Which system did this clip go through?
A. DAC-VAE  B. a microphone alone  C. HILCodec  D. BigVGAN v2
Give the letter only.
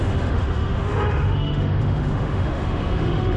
A